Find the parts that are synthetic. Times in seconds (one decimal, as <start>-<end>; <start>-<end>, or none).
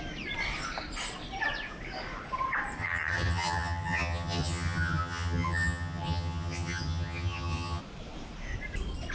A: 2.8-7.8